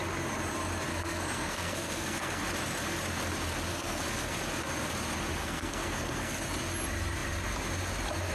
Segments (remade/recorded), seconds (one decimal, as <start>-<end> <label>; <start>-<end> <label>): 0.0-0.9 recorded; 0.9-2.4 remade; 2.4-3.7 recorded; 3.7-4.4 remade; 4.4-5.4 recorded; 5.4-6.4 remade; 6.4-8.3 recorded